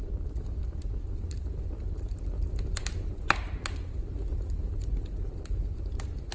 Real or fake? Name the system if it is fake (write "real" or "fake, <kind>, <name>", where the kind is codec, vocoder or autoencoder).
real